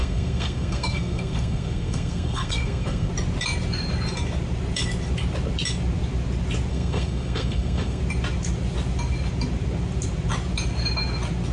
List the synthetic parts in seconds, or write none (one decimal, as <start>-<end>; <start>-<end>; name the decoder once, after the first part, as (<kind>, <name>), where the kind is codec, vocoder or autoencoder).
0.0-3.1 (codec, SNAC); 6.7-8.0